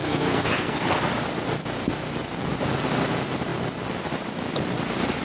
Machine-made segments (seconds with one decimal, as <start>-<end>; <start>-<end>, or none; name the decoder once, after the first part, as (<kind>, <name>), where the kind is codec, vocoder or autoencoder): 0.0-1.0 (codec, SNAC)